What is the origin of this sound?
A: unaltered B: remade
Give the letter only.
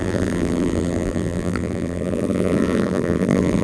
B